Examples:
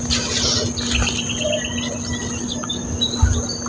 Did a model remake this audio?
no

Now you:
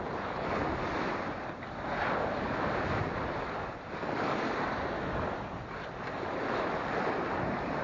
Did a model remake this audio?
no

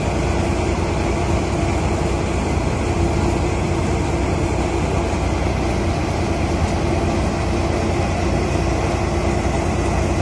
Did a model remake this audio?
no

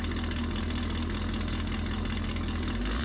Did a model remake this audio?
no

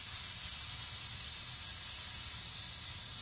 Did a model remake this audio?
no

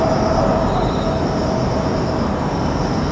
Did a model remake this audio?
no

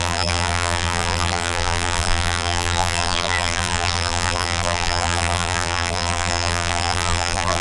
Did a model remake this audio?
yes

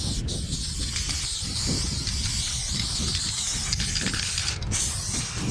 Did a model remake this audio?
no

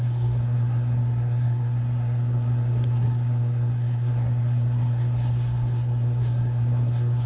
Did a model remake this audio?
yes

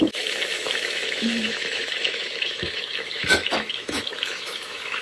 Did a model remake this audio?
yes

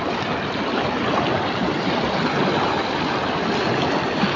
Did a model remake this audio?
no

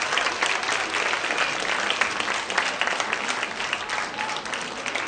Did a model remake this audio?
no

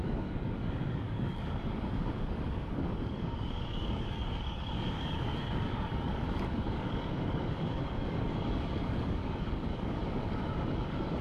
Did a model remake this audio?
yes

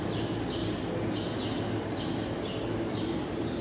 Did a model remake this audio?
no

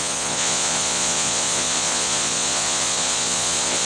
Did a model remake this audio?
yes